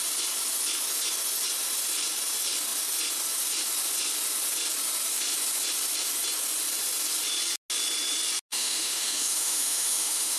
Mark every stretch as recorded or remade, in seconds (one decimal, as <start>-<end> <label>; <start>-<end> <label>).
0.0-8.5 recorded; 8.5-10.4 remade